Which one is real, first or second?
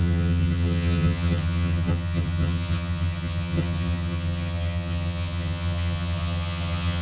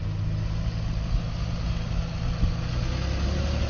second